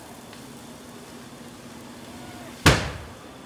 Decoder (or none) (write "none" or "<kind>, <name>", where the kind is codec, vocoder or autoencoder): none